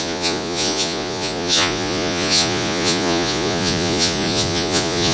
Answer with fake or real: fake